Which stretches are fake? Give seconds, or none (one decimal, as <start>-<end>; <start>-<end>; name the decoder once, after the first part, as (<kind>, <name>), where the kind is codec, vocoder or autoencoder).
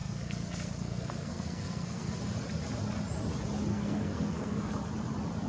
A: 0.0-2.1 (codec, SNAC); 3.7-4.7